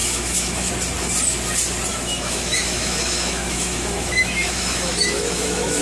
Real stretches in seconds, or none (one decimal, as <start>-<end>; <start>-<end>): 0.7-1.9